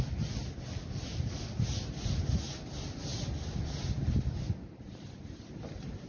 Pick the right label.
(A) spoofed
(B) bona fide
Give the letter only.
B